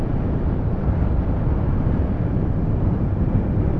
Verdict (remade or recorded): remade